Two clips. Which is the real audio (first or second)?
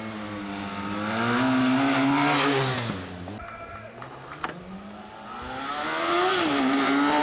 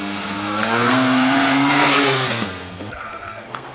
first